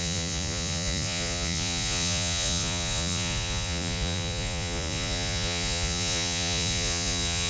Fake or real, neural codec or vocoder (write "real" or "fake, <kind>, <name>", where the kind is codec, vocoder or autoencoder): fake, vocoder, Vocos